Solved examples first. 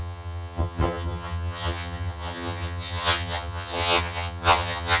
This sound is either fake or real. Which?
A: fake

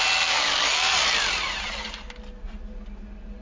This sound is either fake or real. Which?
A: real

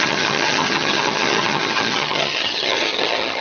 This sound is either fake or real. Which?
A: fake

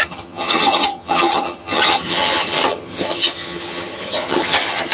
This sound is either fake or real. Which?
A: fake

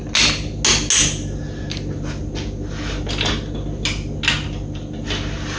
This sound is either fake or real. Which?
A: real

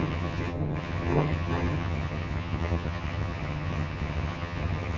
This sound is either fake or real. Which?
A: fake